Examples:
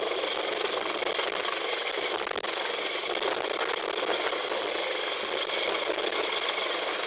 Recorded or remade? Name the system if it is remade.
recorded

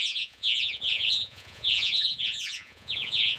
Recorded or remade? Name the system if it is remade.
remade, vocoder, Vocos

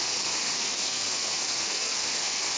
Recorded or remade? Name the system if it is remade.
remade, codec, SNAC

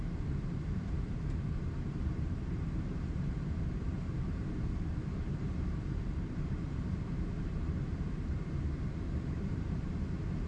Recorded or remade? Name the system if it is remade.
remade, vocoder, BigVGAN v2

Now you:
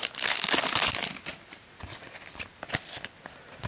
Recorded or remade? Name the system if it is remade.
recorded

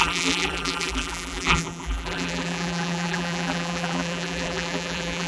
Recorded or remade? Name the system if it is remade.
remade, vocoder, BigVGAN v2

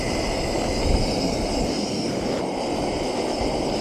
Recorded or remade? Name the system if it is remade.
recorded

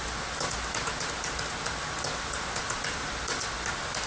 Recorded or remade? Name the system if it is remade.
recorded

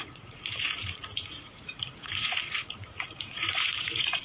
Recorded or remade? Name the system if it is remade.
remade, vocoder, Vocos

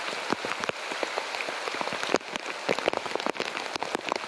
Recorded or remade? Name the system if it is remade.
recorded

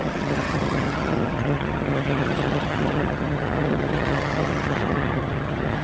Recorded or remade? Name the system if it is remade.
remade, vocoder, HiFi-GAN